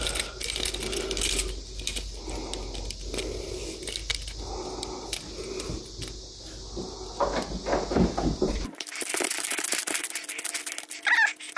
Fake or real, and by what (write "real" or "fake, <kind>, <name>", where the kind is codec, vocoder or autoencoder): real